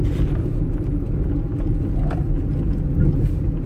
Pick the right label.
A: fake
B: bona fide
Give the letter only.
B